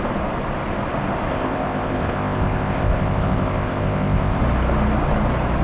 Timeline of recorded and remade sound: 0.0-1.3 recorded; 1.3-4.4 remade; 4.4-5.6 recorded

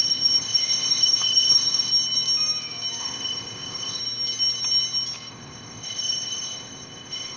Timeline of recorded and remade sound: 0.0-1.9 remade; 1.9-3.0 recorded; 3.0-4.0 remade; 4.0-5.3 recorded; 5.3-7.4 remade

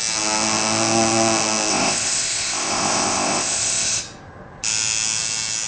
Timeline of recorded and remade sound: 0.0-1.7 recorded; 1.7-4.0 remade; 4.0-5.7 recorded